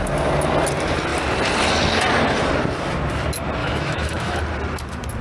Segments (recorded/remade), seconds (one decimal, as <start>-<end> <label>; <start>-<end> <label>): 0.0-3.6 recorded; 3.6-4.4 remade; 4.4-5.2 recorded